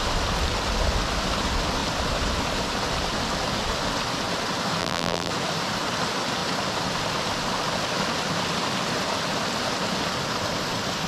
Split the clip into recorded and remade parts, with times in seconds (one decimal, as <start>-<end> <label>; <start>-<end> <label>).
0.0-4.8 recorded; 4.8-5.3 remade; 5.3-11.1 recorded